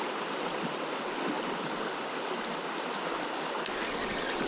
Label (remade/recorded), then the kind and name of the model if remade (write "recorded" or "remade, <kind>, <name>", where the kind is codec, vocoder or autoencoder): recorded